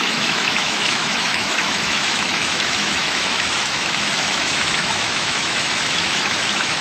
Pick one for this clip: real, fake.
fake